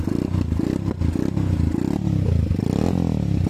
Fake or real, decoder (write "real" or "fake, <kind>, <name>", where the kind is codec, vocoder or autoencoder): real